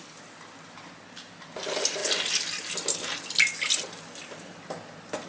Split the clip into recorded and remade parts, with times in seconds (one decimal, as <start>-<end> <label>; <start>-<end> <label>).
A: 0.0-5.3 recorded